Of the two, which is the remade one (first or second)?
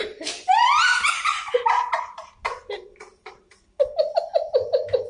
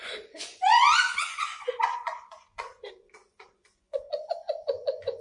second